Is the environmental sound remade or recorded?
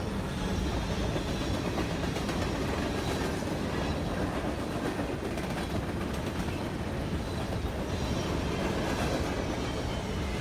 recorded